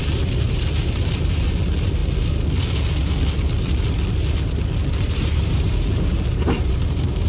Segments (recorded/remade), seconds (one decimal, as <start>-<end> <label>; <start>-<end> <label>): 0.0-2.0 remade; 2.0-4.9 recorded; 4.9-7.3 remade